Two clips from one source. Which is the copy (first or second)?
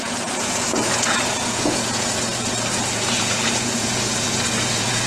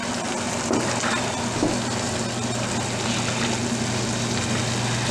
first